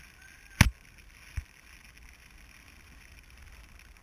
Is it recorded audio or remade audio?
recorded